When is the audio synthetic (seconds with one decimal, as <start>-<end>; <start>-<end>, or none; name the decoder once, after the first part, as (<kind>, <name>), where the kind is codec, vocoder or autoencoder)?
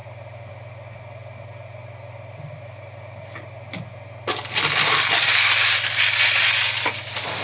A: none